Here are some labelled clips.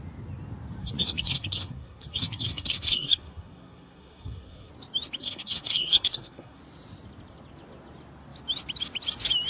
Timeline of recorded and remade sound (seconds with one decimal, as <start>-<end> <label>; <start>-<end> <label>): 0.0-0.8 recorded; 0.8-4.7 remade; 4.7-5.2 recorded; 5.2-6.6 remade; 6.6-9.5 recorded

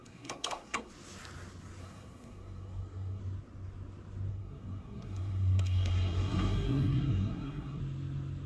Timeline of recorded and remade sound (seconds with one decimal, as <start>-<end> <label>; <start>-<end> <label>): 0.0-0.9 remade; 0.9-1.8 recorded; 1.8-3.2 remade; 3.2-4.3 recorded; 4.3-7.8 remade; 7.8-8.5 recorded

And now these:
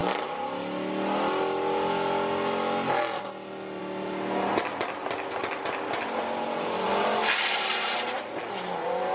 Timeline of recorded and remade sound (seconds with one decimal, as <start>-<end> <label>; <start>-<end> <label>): 0.0-9.1 recorded